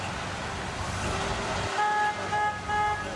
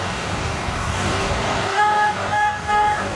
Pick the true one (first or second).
first